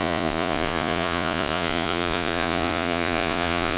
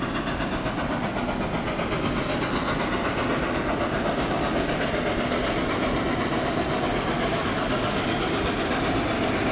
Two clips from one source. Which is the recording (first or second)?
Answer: second